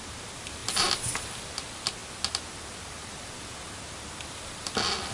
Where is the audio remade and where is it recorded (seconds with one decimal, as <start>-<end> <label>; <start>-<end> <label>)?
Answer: 0.0-5.1 recorded